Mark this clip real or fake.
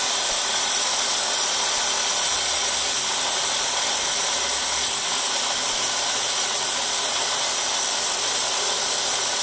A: real